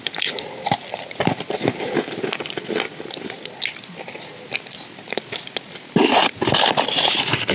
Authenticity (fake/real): real